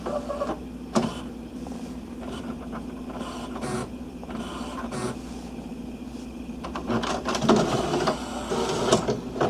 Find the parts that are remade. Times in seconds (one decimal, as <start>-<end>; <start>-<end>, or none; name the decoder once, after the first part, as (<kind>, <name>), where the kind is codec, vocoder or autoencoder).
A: 1.5-2.4 (vocoder, BigVGAN v2); 3.8-4.4